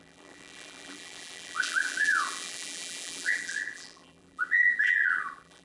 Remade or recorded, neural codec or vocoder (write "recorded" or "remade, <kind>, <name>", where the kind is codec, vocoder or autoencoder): remade, vocoder, BigVGAN v2